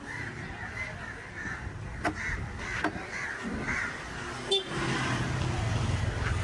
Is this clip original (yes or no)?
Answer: yes